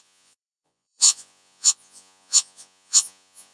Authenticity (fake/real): fake